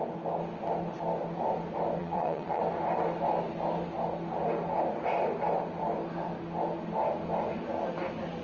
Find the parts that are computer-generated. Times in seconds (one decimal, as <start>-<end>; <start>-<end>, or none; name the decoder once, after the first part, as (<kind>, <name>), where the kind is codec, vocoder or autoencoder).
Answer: 2.0-2.6 (vocoder, WaveNeXt)